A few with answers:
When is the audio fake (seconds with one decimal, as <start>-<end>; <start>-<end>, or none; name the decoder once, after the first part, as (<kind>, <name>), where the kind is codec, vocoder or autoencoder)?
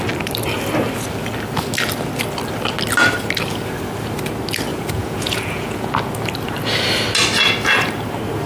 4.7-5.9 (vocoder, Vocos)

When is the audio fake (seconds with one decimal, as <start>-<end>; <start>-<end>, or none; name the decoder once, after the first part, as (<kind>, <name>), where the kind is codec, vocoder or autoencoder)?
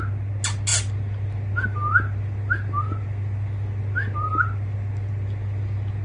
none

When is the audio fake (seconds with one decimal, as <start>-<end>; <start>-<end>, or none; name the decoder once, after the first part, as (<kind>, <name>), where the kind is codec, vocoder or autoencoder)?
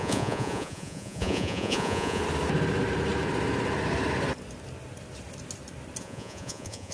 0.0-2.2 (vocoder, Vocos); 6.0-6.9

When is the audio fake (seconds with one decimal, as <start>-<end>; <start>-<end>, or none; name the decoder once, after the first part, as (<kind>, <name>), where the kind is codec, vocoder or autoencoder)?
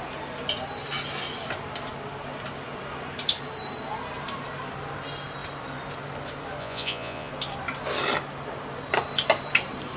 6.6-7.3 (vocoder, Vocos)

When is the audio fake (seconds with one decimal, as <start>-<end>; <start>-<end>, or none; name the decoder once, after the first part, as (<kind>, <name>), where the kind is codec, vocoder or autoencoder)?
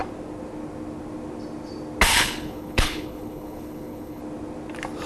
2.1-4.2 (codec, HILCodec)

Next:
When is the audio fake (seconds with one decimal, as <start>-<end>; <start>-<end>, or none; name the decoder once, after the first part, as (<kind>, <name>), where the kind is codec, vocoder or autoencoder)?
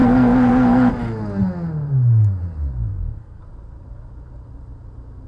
0.0-0.9 (codec, SNAC); 2.9-3.4